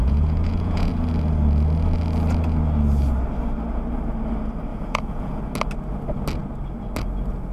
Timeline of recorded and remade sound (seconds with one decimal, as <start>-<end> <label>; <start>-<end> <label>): 0.0-0.9 remade; 0.9-4.7 recorded; 4.7-5.4 remade; 5.4-7.5 recorded